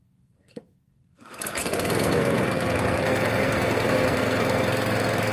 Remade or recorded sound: remade